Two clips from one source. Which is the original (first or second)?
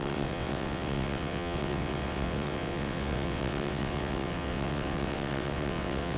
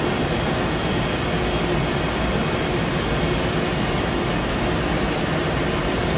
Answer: second